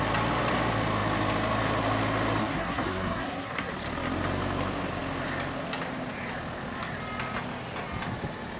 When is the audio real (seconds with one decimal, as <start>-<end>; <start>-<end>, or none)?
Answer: 0.0-2.4; 3.7-8.6